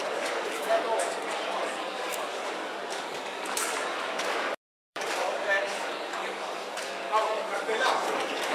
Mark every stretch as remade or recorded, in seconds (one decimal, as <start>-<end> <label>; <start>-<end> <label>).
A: 0.0-8.5 remade